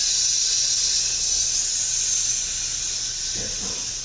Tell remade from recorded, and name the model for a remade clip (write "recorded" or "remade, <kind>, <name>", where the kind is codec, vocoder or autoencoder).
recorded